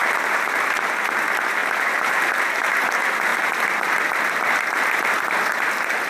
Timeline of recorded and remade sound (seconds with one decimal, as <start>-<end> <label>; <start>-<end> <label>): 0.0-6.1 recorded